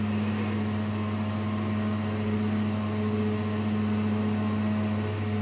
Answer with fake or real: real